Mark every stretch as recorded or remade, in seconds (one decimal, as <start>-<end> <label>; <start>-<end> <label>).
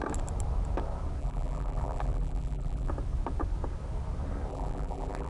0.0-1.2 recorded; 1.2-2.9 remade; 2.9-4.5 recorded; 4.5-5.3 remade